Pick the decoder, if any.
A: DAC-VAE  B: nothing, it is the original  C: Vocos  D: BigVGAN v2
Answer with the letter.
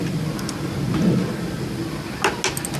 B